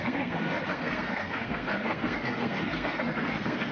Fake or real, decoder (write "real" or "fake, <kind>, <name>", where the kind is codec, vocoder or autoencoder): fake, codec, SNAC